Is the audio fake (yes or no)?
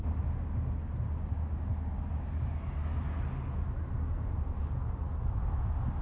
no